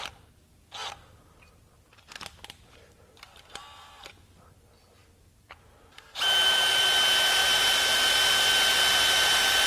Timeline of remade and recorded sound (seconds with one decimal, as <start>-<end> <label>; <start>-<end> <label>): 0.0-9.7 recorded